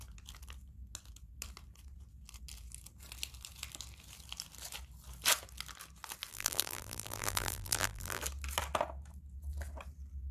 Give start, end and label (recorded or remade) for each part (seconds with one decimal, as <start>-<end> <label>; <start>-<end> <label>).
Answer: 0.0-6.3 recorded; 6.3-8.2 remade; 8.2-10.3 recorded